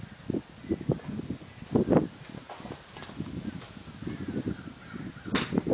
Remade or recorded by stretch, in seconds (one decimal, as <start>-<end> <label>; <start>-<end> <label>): 0.0-0.6 recorded; 0.6-1.5 remade; 1.5-5.7 recorded